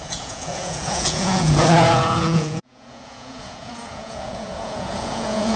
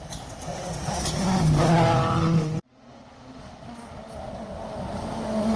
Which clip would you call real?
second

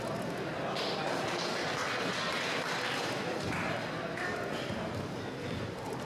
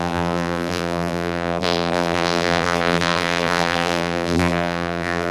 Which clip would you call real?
first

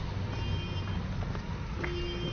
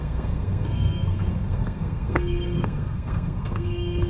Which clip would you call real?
first